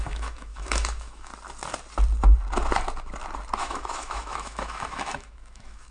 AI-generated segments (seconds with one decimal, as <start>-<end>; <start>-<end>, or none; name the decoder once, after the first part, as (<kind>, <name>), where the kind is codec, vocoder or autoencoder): 0.0-1.3 (autoencoder, DAC-VAE); 3.6-5.9